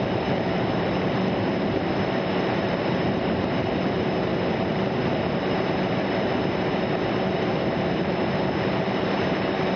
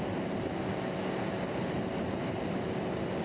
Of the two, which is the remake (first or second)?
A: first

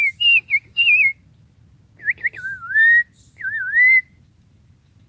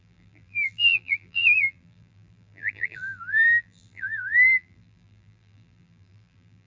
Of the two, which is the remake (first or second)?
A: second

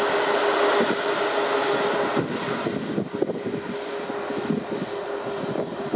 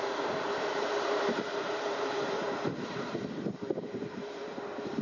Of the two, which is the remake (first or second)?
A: second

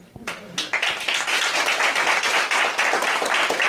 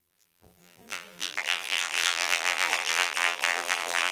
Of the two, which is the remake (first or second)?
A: second